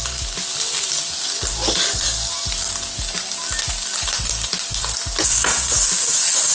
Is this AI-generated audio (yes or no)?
no